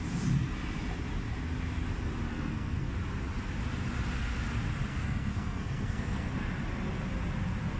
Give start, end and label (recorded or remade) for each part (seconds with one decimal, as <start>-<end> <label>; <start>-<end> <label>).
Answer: 0.0-2.3 recorded; 2.3-2.9 remade; 2.9-4.9 recorded; 4.9-6.3 remade; 6.3-7.8 recorded

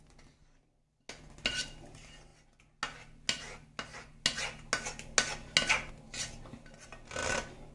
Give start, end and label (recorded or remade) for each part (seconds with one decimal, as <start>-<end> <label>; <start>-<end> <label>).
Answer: 0.0-7.7 recorded

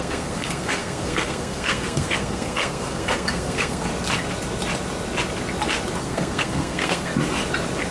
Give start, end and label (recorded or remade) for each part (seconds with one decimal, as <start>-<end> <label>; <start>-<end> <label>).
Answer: 0.0-3.9 remade; 3.9-6.0 recorded; 6.0-7.1 remade; 7.1-7.9 recorded

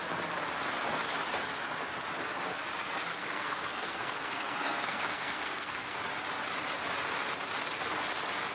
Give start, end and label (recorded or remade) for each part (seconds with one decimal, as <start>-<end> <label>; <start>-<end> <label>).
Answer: 0.0-3.1 recorded; 3.1-6.0 remade; 6.0-8.5 recorded

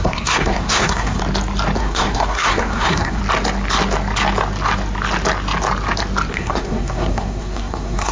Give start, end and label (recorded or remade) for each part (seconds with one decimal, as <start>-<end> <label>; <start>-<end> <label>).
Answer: 0.0-1.2 remade; 1.2-1.8 recorded; 1.8-3.2 remade; 3.2-6.3 recorded; 6.3-8.1 remade

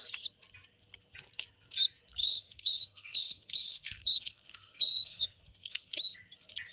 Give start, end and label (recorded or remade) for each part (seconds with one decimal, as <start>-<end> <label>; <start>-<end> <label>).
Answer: 0.0-2.2 recorded; 2.2-5.9 remade; 5.9-6.7 recorded

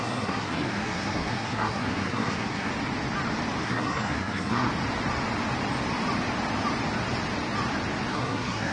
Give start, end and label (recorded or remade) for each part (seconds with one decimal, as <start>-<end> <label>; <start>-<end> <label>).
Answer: 0.0-2.7 remade; 2.7-3.6 recorded; 3.6-4.7 remade; 4.7-8.1 recorded; 8.1-8.7 remade

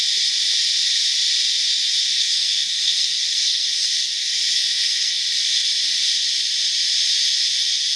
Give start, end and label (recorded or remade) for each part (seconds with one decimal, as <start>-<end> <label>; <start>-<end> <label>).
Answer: 0.0-2.2 recorded; 2.2-5.2 remade; 5.2-8.0 recorded